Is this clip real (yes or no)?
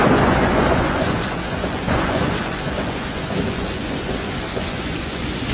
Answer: no